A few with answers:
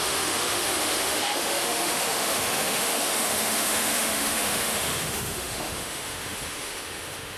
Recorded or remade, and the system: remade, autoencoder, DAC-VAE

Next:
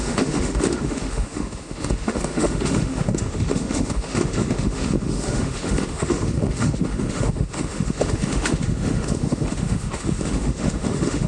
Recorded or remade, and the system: remade, autoencoder, DAC-VAE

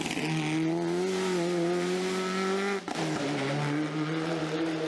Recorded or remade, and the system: recorded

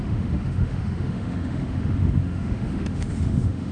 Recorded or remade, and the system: remade, autoencoder, DAC-VAE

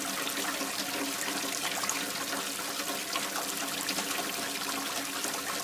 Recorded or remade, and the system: recorded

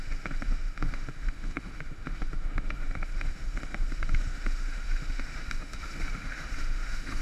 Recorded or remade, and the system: remade, autoencoder, DAC-VAE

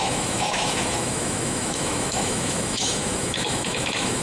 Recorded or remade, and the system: remade, autoencoder, DAC-VAE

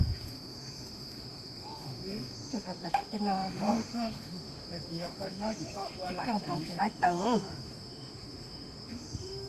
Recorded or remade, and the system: remade, autoencoder, DAC-VAE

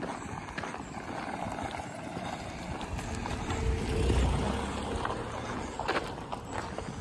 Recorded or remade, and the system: recorded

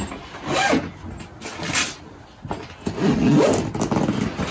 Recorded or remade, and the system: recorded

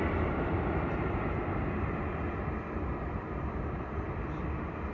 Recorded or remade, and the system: recorded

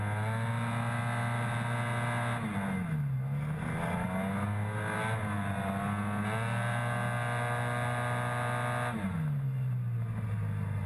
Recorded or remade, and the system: recorded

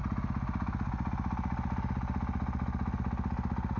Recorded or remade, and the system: recorded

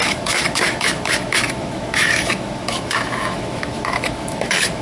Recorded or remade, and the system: remade, autoencoder, DAC-VAE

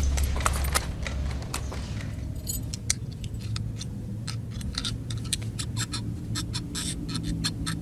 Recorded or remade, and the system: recorded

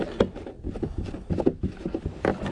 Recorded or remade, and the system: recorded